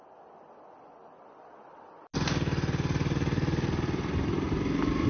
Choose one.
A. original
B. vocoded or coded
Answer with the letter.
A